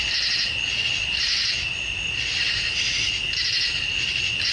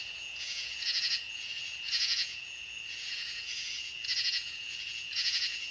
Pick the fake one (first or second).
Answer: second